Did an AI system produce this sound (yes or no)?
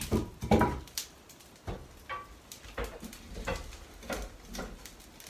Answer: no